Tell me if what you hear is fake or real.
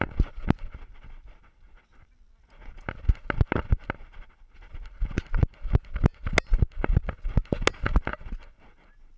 real